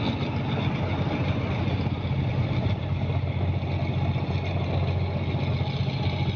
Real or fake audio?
real